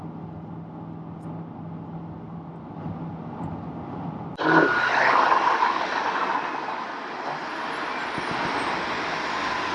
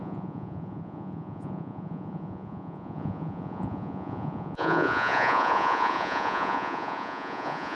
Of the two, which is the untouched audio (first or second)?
first